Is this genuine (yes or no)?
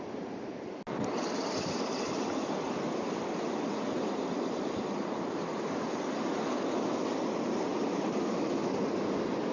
yes